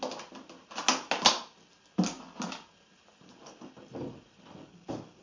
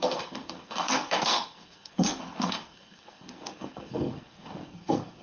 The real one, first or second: first